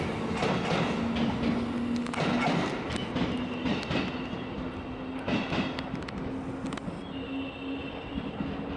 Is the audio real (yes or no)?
yes